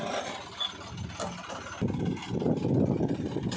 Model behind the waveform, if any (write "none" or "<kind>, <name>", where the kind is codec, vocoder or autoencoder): none